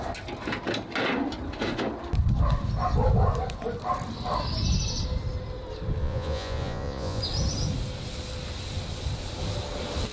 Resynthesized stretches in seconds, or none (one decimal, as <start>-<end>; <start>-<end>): 6.0-7.2